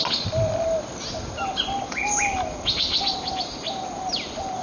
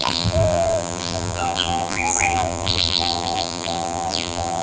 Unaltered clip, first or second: first